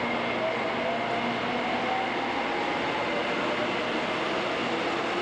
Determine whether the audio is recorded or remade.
recorded